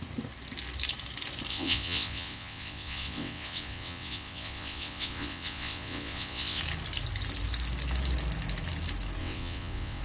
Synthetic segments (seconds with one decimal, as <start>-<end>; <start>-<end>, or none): 1.5-6.6; 9.2-10.0